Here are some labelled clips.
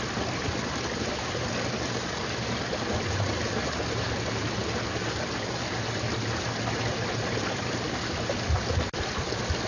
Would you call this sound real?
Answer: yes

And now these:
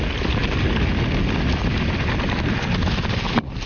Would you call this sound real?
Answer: yes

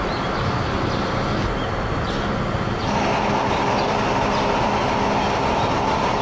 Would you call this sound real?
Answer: yes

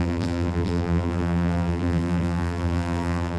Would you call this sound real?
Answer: no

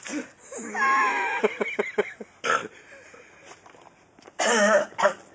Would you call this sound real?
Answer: yes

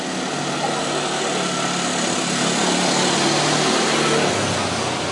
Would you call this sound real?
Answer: yes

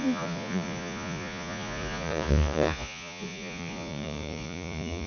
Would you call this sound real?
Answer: no